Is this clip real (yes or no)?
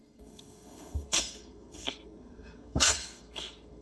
no